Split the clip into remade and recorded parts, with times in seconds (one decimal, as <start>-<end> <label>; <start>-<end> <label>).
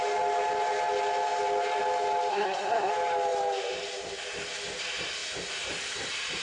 0.0-2.3 recorded; 2.3-2.9 remade; 2.9-6.4 recorded